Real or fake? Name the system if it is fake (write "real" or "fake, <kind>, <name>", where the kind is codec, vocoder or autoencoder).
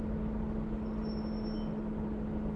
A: real